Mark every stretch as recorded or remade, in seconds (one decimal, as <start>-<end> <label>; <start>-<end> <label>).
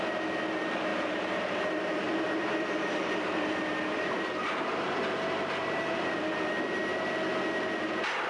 0.0-0.9 recorded; 0.9-4.1 remade; 4.1-5.6 recorded; 5.6-6.2 remade; 6.2-8.3 recorded